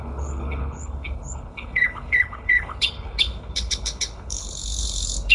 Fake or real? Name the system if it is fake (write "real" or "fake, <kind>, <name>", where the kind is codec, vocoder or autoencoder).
fake, codec, HILCodec